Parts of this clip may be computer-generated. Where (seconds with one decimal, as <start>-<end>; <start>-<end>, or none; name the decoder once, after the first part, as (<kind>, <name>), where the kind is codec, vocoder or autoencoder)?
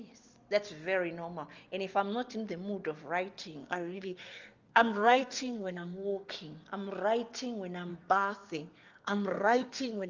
3.6-6.3 (codec, SNAC); 7.9-10.1